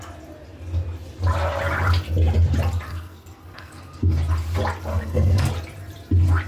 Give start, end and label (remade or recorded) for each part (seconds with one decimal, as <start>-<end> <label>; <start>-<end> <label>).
0.0-2.9 recorded; 2.9-4.1 remade; 4.1-4.9 recorded; 4.9-5.5 remade; 5.5-6.5 recorded